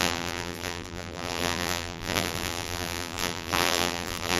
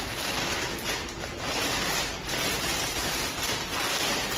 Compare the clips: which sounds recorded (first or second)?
second